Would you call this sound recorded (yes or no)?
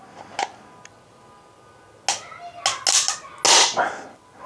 yes